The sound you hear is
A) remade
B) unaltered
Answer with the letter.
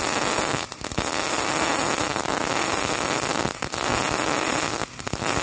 B